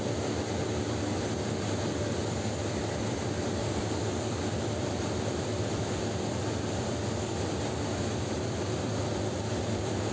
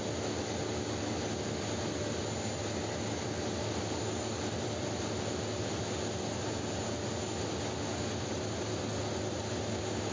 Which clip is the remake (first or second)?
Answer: first